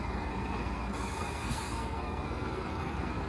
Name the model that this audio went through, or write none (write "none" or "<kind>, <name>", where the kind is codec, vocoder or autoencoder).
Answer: codec, SNAC